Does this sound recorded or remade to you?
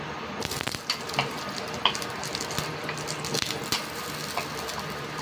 recorded